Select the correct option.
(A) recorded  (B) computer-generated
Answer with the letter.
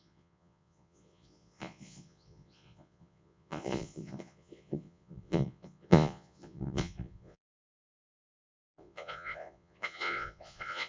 B